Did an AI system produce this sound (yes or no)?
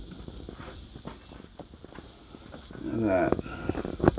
no